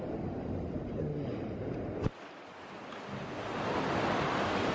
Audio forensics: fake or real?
real